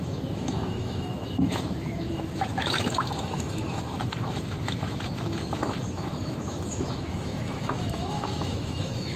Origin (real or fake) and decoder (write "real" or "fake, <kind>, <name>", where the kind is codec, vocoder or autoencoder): fake, autoencoder, DAC-VAE